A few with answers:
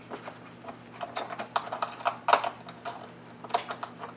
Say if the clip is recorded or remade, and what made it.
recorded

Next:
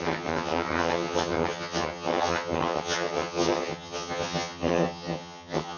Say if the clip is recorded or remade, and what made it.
remade, vocoder, HiFi-GAN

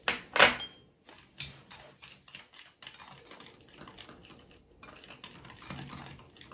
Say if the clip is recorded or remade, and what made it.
recorded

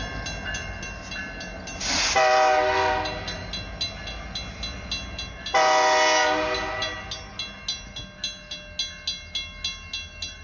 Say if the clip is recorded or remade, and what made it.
recorded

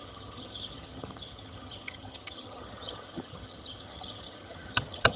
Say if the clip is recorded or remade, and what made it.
remade, vocoder, HiFi-GAN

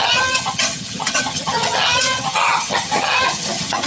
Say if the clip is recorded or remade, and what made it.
remade, vocoder, HiFi-GAN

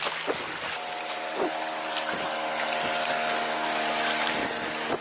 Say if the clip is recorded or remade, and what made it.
recorded